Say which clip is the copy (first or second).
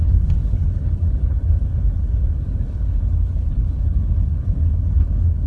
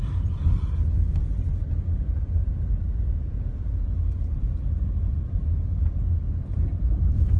first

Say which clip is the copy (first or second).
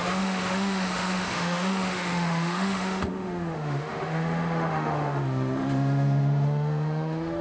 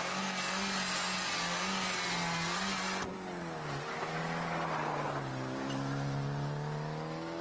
first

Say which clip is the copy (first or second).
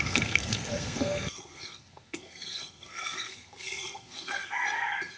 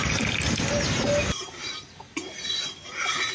first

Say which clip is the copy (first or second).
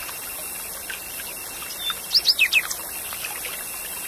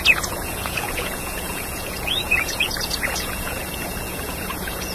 second